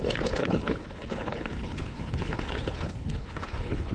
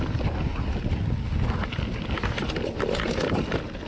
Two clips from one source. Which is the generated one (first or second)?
first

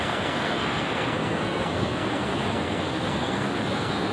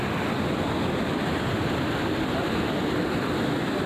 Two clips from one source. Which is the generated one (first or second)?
first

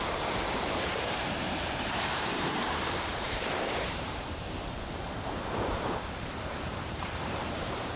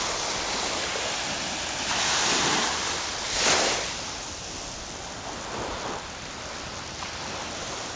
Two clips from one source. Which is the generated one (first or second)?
first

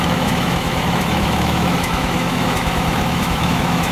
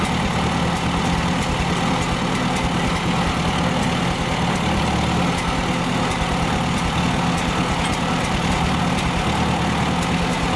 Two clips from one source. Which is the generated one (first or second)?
first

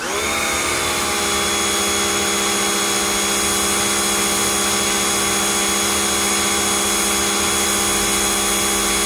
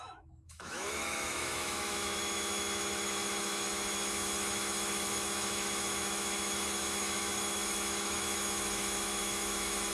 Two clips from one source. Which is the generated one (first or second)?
second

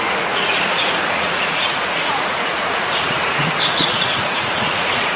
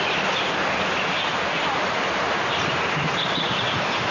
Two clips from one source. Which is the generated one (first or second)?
first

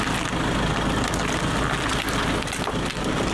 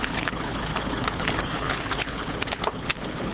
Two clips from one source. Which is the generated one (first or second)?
second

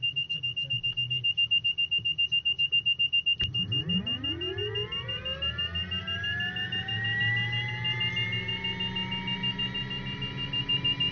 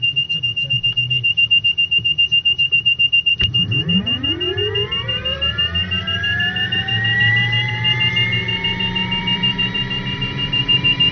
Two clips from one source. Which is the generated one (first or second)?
second